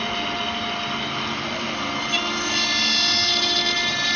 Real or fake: real